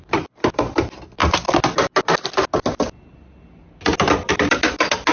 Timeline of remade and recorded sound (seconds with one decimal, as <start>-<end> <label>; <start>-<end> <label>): 0.0-1.2 remade; 1.2-4.3 recorded; 4.3-5.1 remade